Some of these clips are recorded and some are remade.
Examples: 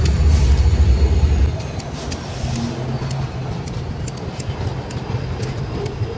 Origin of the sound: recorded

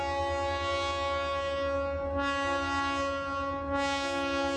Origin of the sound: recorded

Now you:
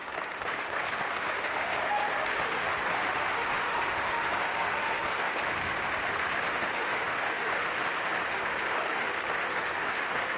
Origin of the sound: remade